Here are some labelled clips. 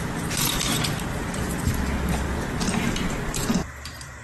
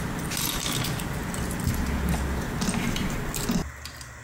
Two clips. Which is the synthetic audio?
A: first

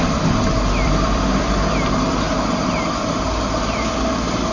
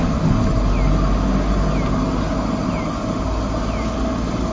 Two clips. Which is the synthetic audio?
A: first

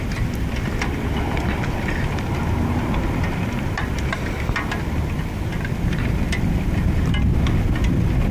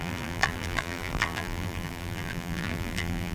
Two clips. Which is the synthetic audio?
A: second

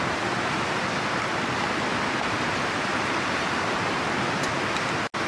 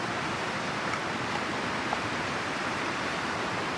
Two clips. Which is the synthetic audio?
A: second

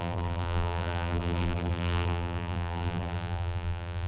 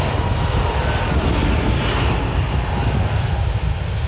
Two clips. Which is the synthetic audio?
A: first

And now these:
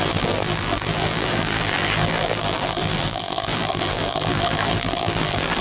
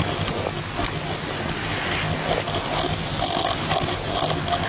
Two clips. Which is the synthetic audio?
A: first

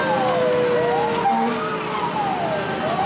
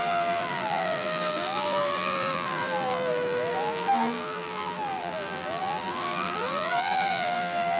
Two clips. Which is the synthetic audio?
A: second